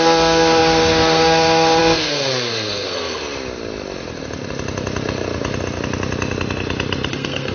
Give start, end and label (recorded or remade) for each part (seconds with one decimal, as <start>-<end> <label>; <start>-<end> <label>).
0.0-3.2 remade; 3.2-7.1 recorded; 7.1-7.5 remade

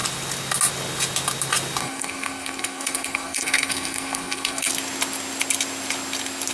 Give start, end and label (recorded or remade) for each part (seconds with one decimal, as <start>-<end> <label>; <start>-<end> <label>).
0.0-1.8 recorded; 1.8-4.7 remade; 4.7-6.5 recorded

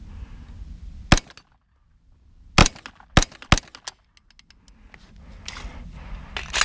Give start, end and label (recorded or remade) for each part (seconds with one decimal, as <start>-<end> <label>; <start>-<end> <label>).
0.0-6.6 recorded

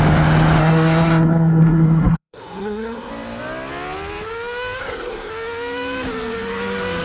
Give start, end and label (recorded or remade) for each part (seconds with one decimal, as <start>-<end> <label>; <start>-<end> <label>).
0.0-0.6 recorded; 0.6-3.1 remade; 3.1-4.8 recorded; 4.8-5.3 remade; 5.3-7.0 recorded

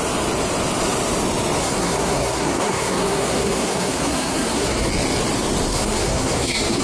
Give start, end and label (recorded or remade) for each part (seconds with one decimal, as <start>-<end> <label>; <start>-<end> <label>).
0.0-1.6 recorded; 1.6-4.9 remade; 4.9-5.7 recorded; 5.7-6.8 remade

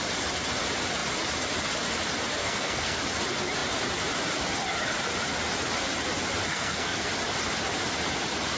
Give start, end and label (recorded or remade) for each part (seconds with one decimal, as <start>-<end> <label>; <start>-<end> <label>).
0.0-2.4 recorded; 2.4-3.0 remade; 3.0-6.5 recorded; 6.5-7.1 remade; 7.1-8.6 recorded

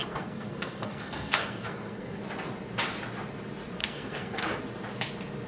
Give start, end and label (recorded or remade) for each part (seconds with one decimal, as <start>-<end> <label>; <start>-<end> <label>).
0.0-2.2 remade; 2.2-3.8 recorded; 3.8-4.6 remade; 4.6-5.5 recorded